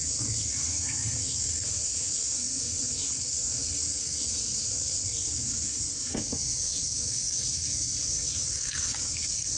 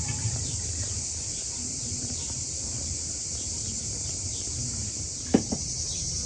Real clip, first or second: second